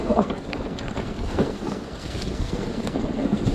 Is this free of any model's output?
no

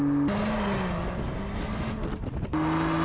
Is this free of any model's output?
yes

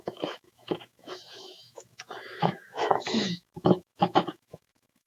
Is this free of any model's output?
no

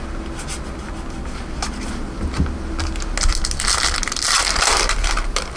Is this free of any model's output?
yes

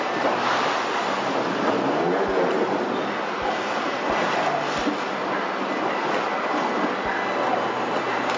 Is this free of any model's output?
yes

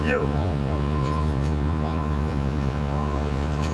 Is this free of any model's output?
no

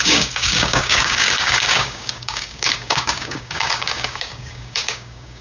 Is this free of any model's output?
no